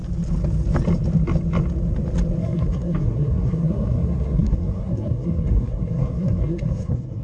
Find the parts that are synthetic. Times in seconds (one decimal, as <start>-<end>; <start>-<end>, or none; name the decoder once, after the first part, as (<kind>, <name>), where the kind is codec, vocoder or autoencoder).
2.4-7.2 (codec, SNAC)